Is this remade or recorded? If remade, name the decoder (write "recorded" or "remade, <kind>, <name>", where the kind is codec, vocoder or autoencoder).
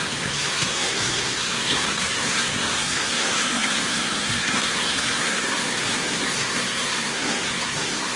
remade, codec, SNAC